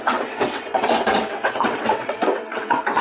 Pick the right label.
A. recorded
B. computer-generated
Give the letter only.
B